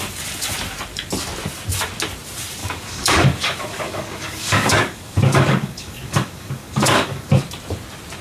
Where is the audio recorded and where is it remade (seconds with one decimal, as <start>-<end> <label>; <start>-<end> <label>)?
0.0-2.6 recorded; 2.6-7.3 remade; 7.3-8.2 recorded